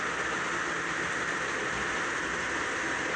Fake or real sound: real